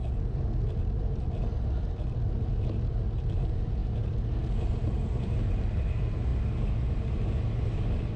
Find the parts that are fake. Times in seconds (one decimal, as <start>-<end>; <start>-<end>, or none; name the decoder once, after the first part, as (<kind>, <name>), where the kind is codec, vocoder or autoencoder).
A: none